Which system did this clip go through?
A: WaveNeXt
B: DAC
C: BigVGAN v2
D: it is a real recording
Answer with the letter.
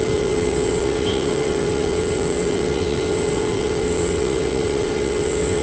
A